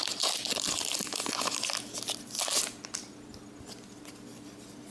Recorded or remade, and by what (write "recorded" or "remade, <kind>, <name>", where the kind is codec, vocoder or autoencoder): recorded